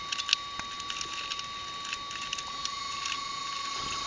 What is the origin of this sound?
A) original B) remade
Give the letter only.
A